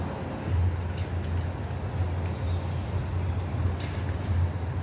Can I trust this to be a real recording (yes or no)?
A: yes